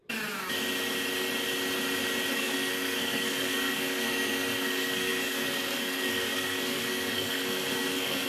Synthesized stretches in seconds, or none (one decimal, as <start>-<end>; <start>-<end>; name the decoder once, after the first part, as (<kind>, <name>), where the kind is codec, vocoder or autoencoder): 2.3-8.3 (codec, SNAC)